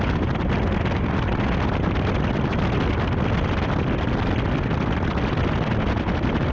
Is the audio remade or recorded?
recorded